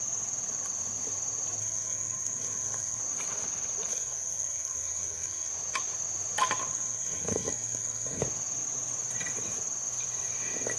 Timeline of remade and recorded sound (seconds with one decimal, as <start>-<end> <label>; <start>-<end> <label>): 0.0-1.6 recorded; 1.6-3.0 remade; 3.0-3.9 recorded; 3.9-5.5 remade; 5.5-6.7 recorded; 6.7-8.2 remade; 8.2-10.8 recorded